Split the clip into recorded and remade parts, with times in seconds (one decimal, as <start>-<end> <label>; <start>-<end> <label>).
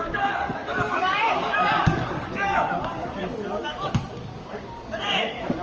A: 0.0-5.6 remade